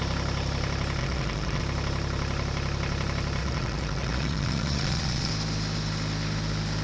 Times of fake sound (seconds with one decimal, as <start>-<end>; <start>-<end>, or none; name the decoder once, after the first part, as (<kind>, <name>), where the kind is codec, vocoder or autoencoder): 1.0-1.6 (vocoder, Vocos); 3.4-5.3